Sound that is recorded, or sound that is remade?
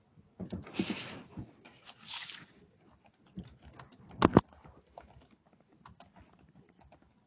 recorded